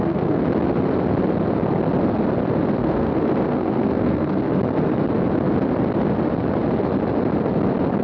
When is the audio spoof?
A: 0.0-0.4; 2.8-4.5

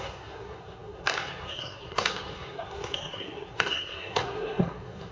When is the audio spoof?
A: 0.0-5.1

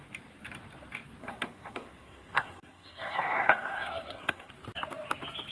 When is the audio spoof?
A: 1.2-4.5